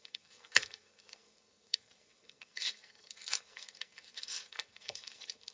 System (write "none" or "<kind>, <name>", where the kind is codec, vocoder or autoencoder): codec, SNAC